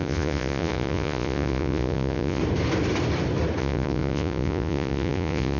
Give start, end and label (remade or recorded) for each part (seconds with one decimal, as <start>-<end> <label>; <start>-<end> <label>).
0.0-2.4 remade; 2.4-3.6 recorded; 3.6-5.6 remade